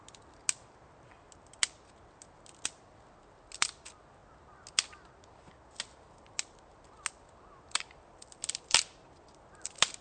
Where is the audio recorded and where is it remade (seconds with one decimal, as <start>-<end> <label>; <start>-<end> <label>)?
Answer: 0.0-10.0 recorded